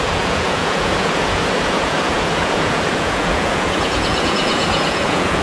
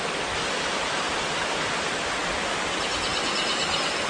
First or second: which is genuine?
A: second